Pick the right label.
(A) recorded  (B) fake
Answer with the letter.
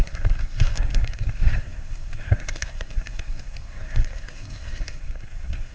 B